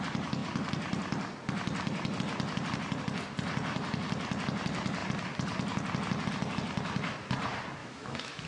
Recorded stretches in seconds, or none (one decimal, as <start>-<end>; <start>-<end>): 0.0-7.8

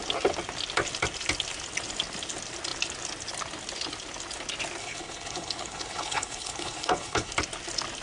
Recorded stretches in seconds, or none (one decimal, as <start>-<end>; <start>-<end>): 0.0-4.8; 7.3-8.0

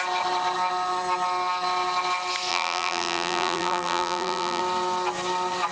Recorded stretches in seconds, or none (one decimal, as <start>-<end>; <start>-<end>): 0.0-2.5; 4.6-5.7

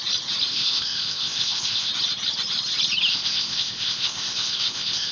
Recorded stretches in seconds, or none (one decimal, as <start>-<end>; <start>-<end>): 0.0-0.5; 1.9-3.1

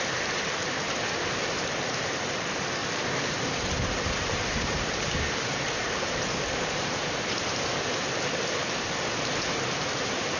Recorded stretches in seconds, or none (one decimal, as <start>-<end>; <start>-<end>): 0.0-2.8; 7.8-10.4

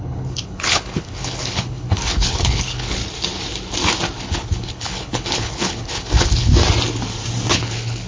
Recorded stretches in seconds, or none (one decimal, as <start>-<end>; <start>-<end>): 3.0-4.2; 6.5-7.5

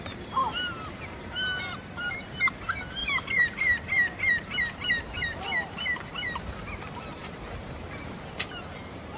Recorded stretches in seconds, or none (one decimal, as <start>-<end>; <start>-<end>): none